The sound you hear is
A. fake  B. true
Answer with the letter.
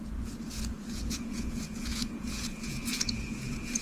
A